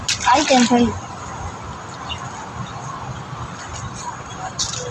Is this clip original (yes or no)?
yes